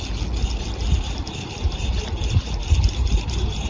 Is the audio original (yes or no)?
yes